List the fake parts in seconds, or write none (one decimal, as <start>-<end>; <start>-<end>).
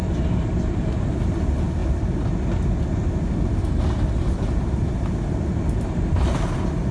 none